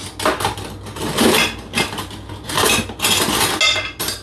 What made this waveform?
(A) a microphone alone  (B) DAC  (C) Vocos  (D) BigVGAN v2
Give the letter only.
A